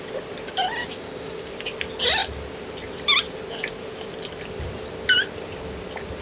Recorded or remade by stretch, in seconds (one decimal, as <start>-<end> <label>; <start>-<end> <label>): 0.0-0.8 recorded; 0.8-1.5 remade; 1.5-6.2 recorded